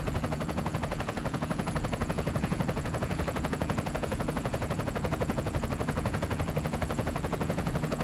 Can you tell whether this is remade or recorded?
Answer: remade